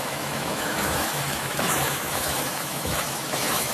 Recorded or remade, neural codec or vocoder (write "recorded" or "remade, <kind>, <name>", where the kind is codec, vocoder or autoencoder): remade, autoencoder, DAC-VAE